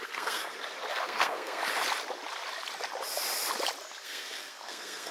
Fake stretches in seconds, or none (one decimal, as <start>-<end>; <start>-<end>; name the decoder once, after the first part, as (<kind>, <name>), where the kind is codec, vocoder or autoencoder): 0.0-0.4 (codec, SNAC); 0.9-1.6; 4.0-5.1